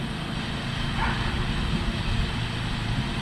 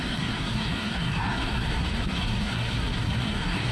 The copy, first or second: second